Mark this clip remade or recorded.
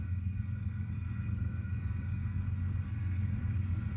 remade